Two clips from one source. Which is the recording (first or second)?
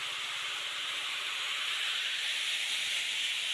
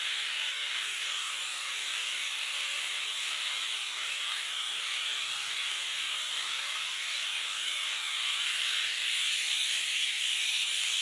first